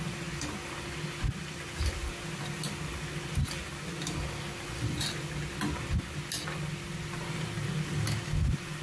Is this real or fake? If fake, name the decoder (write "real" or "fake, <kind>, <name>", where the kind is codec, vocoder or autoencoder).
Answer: real